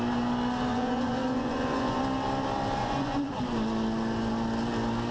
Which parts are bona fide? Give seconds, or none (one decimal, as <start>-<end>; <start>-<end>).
0.0-0.7; 2.0-2.8; 3.4-5.1